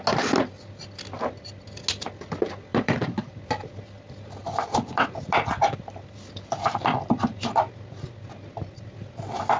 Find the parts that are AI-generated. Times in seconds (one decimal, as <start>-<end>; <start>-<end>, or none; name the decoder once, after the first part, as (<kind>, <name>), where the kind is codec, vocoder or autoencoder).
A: 2.7-3.5 (vocoder, BigVGAN v2); 4.4-4.9